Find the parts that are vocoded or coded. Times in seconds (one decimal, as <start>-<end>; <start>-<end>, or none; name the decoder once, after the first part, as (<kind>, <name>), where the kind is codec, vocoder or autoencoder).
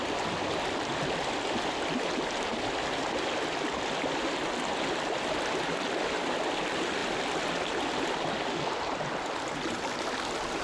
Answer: none